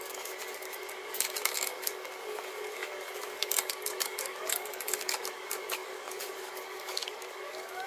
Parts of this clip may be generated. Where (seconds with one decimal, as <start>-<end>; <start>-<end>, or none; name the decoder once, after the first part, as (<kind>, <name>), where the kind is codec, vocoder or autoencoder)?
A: 0.0-7.9 (codec, DAC)